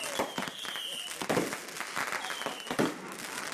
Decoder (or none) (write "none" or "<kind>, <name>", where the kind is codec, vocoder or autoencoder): none